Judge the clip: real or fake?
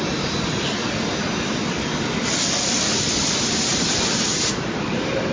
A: real